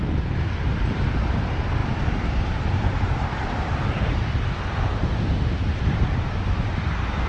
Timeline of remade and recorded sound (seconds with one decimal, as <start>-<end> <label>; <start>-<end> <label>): 0.0-1.8 recorded; 1.8-4.3 remade; 4.3-7.3 recorded